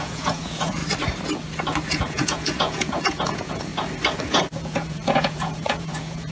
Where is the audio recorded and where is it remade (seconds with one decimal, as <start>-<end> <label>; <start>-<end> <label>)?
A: 0.0-0.8 remade; 0.8-1.9 recorded; 1.9-3.7 remade; 3.7-4.3 recorded; 4.3-6.3 remade